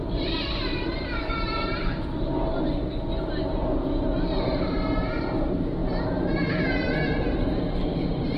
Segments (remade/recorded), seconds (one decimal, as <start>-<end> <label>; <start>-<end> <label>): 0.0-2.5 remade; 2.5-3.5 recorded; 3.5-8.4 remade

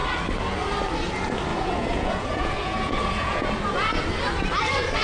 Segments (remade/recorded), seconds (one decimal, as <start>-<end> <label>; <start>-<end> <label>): 0.0-1.5 recorded; 1.5-3.5 remade; 3.5-5.0 recorded

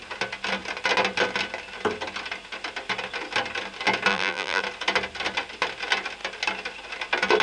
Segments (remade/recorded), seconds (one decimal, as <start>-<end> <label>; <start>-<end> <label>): 0.0-4.1 recorded; 4.1-4.6 remade; 4.6-7.4 recorded

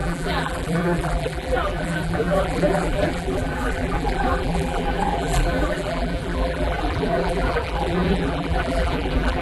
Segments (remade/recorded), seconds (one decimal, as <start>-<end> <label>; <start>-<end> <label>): 0.0-9.4 remade